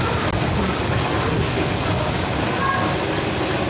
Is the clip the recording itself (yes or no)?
yes